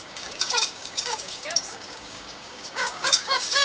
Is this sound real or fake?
fake